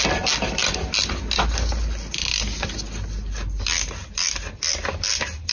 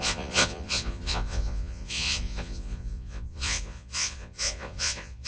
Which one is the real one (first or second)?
first